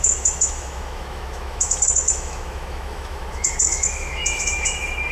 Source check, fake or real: fake